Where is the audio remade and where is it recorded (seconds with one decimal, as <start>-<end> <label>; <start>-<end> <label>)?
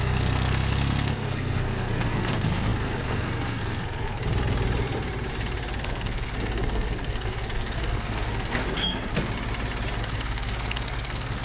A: 0.0-4.2 remade; 4.2-5.8 recorded; 5.8-9.1 remade; 9.1-10.0 recorded; 10.0-11.4 remade